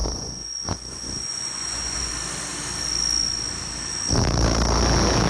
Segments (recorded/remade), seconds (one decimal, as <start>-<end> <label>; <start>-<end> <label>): 0.0-2.1 remade; 2.1-5.3 recorded